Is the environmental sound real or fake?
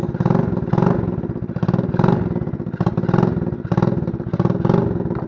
real